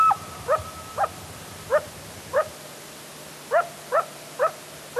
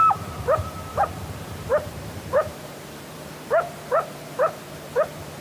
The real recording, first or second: first